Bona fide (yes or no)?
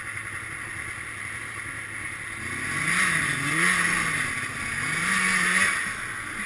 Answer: yes